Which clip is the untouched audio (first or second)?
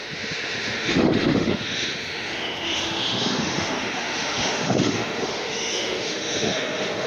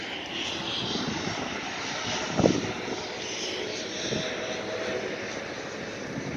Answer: second